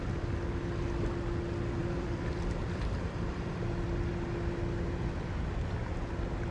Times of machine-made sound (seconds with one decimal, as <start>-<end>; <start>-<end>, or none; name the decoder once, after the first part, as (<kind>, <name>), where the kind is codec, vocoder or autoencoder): 1.8-3.6 (vocoder, BigVGAN v2)